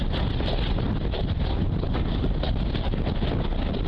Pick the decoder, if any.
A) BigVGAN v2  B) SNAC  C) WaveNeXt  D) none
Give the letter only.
D